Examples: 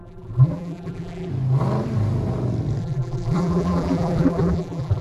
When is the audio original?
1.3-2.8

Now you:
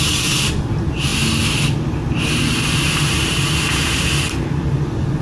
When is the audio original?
0.0-5.2

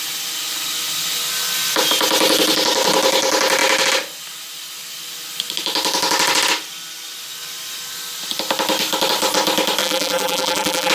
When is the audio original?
0.0-9.8